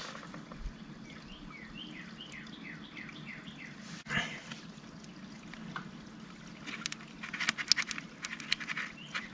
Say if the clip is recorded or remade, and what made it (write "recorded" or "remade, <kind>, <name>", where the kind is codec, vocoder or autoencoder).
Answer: recorded